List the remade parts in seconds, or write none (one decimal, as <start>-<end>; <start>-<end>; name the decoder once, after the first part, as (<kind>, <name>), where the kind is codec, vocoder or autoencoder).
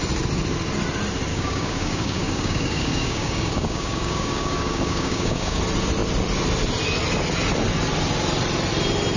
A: 1.3-5.6 (codec, DAC)